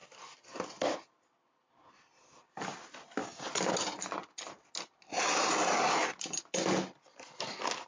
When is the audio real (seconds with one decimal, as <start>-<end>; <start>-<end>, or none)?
0.0-7.9

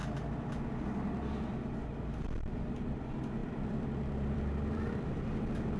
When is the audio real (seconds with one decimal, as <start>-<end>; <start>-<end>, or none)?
0.0-2.5; 3.0-3.4

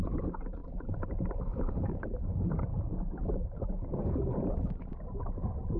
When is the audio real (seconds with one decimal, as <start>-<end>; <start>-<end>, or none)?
4.0-4.7